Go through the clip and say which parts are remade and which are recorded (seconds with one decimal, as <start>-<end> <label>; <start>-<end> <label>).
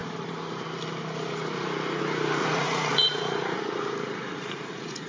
0.0-2.4 recorded; 2.4-3.6 remade; 3.6-4.2 recorded; 4.2-5.1 remade